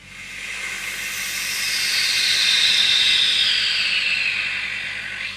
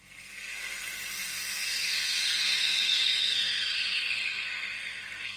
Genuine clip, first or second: first